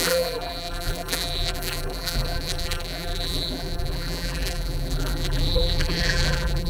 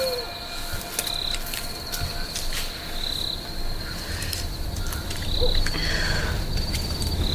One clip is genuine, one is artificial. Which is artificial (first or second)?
first